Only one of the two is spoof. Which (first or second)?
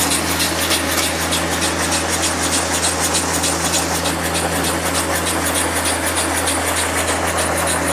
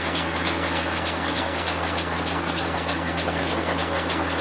second